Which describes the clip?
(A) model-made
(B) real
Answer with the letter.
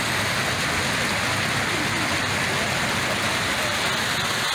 B